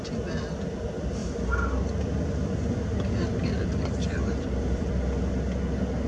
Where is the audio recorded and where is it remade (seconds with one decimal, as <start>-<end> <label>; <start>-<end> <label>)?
0.0-1.2 recorded; 1.2-4.9 remade; 4.9-6.1 recorded